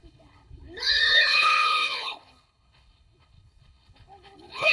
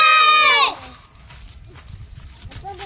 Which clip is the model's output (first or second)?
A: first